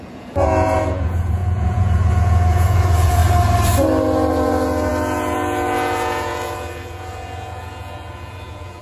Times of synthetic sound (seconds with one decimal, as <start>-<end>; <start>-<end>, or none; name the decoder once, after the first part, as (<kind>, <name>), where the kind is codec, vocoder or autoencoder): 0.0-3.2 (vocoder, Vocos); 4.3-8.8